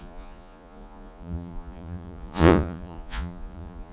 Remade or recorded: remade